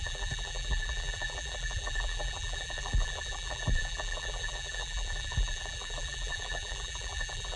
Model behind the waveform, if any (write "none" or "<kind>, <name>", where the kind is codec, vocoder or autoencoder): vocoder, BigVGAN v2